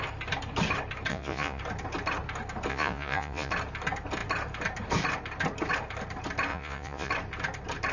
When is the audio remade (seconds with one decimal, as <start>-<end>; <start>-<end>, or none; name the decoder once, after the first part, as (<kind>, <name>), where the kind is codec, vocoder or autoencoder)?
1.1-1.6 (vocoder, Vocos); 2.7-3.5; 6.5-7.1